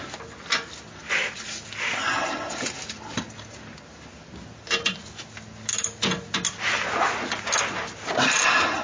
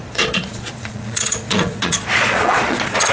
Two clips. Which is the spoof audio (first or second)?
second